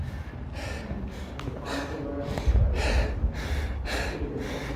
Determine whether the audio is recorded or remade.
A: recorded